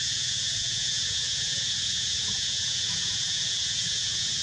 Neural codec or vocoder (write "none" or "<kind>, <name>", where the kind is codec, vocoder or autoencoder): vocoder, Vocos